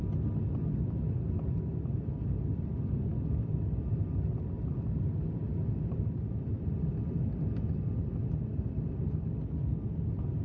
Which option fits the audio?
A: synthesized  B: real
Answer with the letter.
B